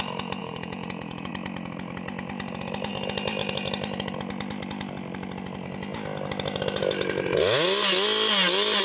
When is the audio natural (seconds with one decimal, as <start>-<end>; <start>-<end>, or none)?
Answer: 0.0-0.4; 1.3-8.8